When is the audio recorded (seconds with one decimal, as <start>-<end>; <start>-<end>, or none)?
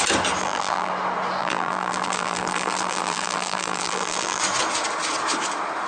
0.0-0.4; 0.9-1.4; 4.4-5.9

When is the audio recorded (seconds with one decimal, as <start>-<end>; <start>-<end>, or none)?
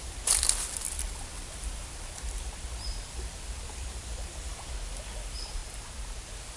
4.5-5.1; 5.6-6.6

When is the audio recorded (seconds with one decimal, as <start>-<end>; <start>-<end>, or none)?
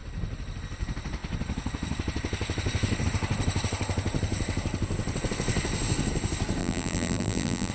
0.0-6.6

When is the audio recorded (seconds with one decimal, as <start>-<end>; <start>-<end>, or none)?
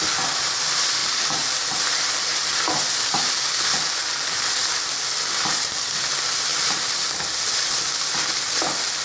0.0-1.0; 2.5-6.5; 7.1-9.0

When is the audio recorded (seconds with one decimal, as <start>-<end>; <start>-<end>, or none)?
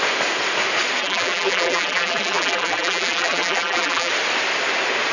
0.0-1.0; 4.1-5.1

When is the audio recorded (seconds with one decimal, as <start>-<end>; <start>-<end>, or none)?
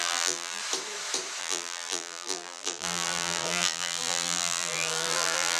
0.6-1.4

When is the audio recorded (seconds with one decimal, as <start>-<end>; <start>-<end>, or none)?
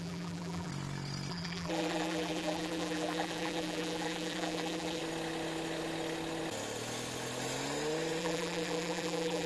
0.7-1.3; 5.0-8.2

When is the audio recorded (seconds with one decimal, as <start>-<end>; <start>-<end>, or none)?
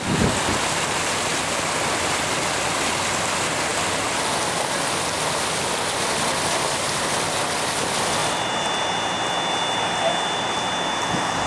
0.0-11.5